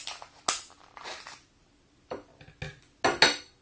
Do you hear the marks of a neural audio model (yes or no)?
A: no